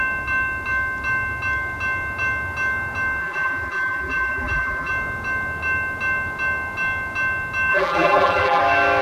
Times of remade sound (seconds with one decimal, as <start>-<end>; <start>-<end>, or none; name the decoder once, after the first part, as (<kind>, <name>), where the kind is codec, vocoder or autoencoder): 3.2-4.9 (vocoder, BigVGAN v2); 7.7-8.6